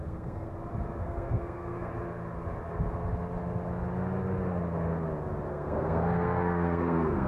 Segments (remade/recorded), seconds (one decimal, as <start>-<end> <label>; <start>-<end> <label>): 0.0-0.5 remade; 0.5-1.0 recorded; 1.0-1.9 remade; 1.9-5.5 recorded; 5.5-7.3 remade